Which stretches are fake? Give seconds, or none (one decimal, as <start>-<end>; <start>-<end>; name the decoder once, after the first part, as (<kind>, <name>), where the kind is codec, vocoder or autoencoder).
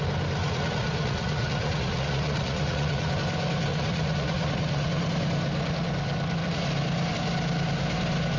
0.4-3.1 (vocoder, Vocos); 3.7-4.9